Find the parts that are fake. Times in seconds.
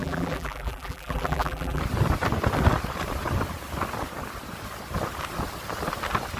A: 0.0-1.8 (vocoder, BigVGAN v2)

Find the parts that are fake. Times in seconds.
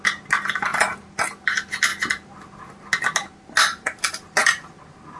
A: none